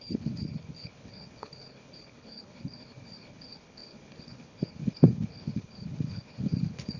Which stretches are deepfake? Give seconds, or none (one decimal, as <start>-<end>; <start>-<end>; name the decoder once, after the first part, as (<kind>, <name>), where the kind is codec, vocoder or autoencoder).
0.0-7.0 (codec, HILCodec)